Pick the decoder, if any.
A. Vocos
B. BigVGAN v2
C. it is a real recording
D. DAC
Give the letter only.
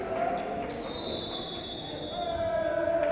C